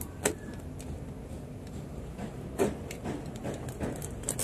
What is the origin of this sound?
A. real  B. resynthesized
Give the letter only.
A